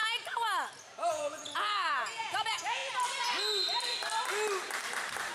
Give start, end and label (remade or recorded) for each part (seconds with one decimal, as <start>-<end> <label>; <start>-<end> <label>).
0.0-1.1 recorded; 1.1-2.8 remade; 2.8-5.3 recorded